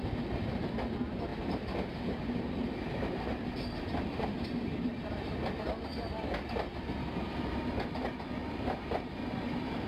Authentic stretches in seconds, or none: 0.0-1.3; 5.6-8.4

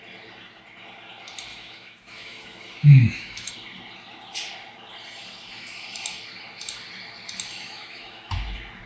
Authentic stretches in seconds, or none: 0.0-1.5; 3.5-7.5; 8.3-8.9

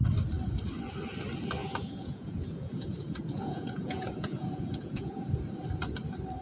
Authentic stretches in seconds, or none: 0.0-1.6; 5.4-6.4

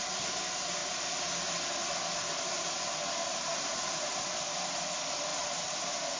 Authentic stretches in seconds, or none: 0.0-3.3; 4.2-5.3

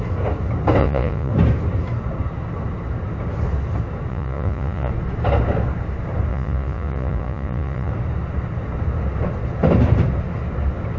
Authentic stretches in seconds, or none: 0.0-0.8; 1.3-4.1; 4.9-6.3; 7.9-11.0